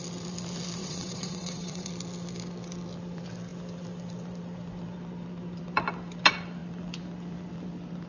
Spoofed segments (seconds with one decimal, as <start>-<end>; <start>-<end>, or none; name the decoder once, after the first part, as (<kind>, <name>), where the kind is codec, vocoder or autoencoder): 0.8-1.9 (vocoder, WaveNeXt)